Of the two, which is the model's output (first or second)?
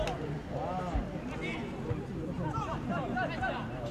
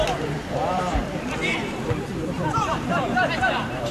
second